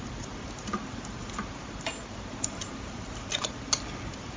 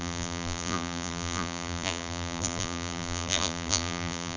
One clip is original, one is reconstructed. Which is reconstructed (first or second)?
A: second